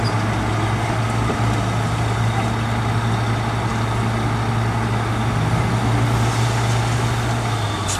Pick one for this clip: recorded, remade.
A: recorded